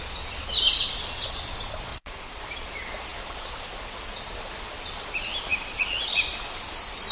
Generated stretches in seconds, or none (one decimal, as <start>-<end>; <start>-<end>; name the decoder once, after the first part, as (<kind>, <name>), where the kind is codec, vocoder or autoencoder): 1.9-2.4 (vocoder, Vocos)